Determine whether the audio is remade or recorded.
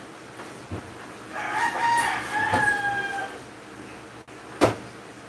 recorded